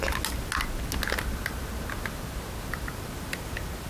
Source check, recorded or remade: recorded